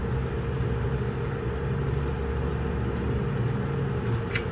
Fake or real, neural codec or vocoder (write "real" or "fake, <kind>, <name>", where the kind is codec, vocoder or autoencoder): real